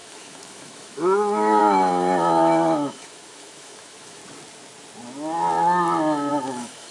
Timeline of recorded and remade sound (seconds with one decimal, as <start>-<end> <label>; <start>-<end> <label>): 0.0-4.2 remade; 4.2-6.3 recorded; 6.3-6.9 remade